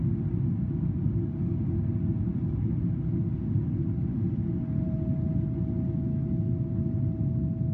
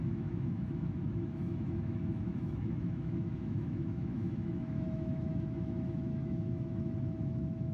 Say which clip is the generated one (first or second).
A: second